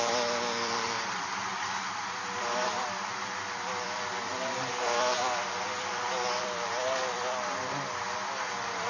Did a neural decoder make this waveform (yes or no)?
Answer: yes